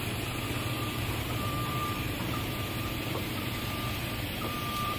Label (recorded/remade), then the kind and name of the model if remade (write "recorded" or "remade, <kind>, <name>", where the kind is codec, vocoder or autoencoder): remade, vocoder, BigVGAN v2